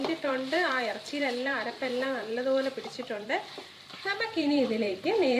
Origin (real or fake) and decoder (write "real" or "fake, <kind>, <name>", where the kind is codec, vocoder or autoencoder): fake, vocoder, BigVGAN v2